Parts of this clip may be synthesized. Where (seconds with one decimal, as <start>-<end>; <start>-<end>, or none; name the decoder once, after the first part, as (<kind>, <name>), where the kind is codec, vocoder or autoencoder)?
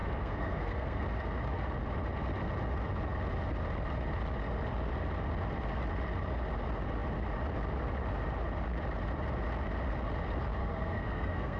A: 0.0-1.0 (codec, SNAC); 10.6-11.6